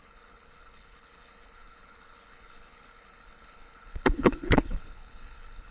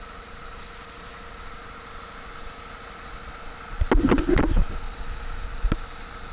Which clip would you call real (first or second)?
second